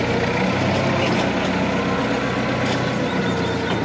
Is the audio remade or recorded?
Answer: recorded